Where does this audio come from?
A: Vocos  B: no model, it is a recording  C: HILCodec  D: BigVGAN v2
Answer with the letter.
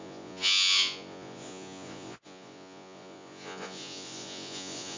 A